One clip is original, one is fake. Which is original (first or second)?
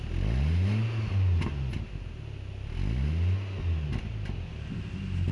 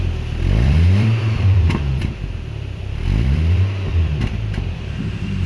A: first